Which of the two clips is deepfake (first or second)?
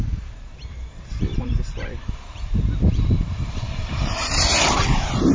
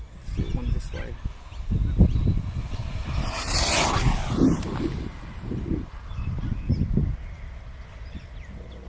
first